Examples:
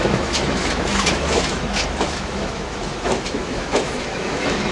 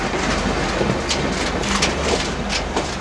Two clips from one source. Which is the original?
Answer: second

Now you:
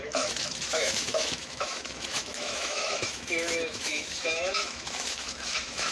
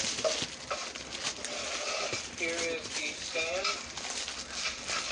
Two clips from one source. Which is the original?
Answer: second